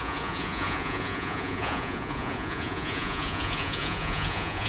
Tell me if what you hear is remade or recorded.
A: remade